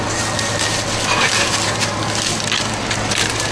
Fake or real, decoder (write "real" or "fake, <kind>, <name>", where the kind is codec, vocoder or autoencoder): real